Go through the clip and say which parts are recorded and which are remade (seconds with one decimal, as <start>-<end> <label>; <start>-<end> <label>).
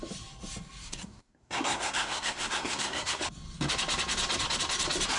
0.0-0.8 recorded; 0.8-3.2 remade; 3.2-5.2 recorded